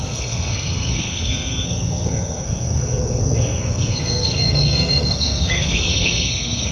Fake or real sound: fake